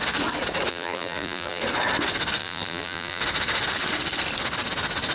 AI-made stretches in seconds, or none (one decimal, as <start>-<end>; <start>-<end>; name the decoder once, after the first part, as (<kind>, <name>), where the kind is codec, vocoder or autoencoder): 0.7-1.6 (vocoder, BigVGAN v2); 2.4-3.2